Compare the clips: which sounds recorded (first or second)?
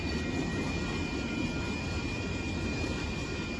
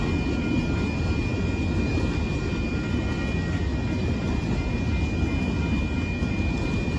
second